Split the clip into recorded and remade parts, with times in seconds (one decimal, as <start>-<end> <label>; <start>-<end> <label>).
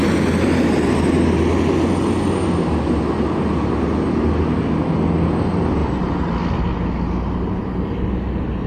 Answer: 0.0-8.7 recorded